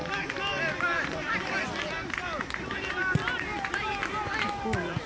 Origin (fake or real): real